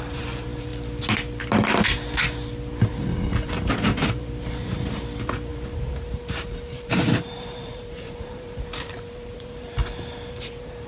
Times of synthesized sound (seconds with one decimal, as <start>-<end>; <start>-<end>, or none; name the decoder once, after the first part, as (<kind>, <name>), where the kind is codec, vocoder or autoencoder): 0.0-0.7 (vocoder, BigVGAN v2); 2.9-9.8; 10.3-10.9